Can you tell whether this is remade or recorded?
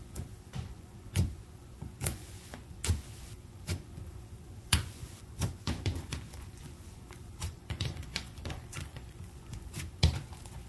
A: remade